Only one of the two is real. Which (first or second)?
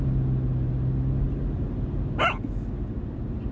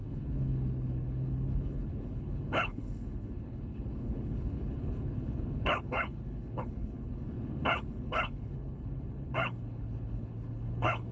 first